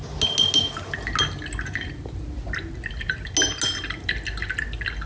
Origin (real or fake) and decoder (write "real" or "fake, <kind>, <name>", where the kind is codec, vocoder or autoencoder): real